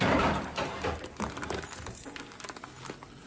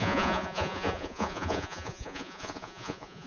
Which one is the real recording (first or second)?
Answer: first